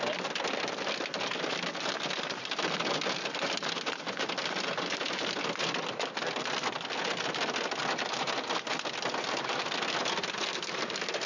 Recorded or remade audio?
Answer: recorded